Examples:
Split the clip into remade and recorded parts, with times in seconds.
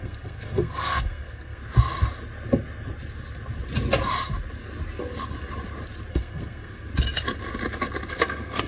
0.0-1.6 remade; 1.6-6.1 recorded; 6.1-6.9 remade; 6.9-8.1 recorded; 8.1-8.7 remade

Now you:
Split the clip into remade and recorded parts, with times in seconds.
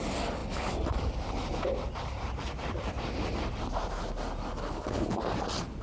0.0-4.6 recorded; 4.6-5.2 remade; 5.2-5.8 recorded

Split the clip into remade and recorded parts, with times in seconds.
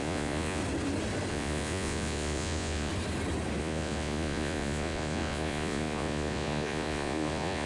0.0-0.6 remade; 0.6-1.3 recorded; 1.3-2.9 remade; 2.9-3.6 recorded; 3.6-7.7 remade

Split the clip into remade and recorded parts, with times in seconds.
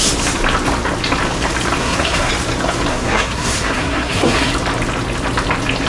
0.0-1.8 recorded; 1.8-2.3 remade; 2.3-2.9 recorded; 2.9-4.5 remade; 4.5-5.9 recorded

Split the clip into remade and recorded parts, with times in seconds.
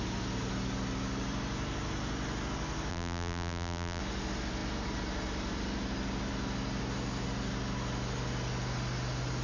0.0-2.9 recorded; 2.9-4.0 remade; 4.0-9.4 recorded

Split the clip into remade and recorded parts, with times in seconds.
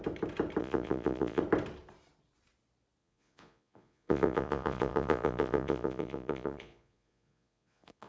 0.0-0.6 recorded; 0.6-1.4 remade; 1.4-3.0 recorded; 3.0-8.1 remade